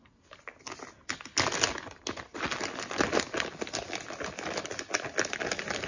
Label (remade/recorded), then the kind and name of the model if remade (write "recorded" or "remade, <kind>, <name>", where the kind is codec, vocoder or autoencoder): recorded